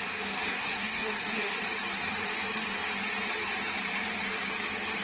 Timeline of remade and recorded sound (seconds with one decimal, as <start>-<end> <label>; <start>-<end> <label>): 0.0-0.5 recorded; 0.5-1.5 remade; 1.5-5.0 recorded